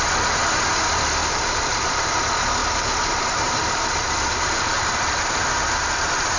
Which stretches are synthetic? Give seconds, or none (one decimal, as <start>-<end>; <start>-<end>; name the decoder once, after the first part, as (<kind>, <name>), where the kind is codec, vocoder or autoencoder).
1.2-2.1 (vocoder, BigVGAN v2); 2.6-6.4